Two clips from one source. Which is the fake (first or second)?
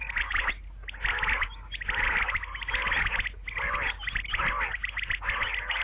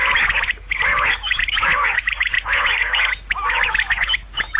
second